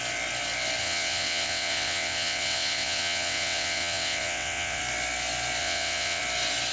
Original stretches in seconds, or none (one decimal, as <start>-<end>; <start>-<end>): 0.0-0.8; 4.8-5.6; 6.2-6.7